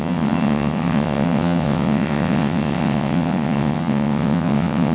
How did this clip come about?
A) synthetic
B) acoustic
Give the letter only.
A